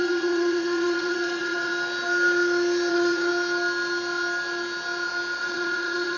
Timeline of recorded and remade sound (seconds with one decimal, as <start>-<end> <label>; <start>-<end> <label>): 0.0-1.7 remade; 1.7-2.9 recorded; 2.9-3.3 remade; 3.3-5.4 recorded; 5.4-6.2 remade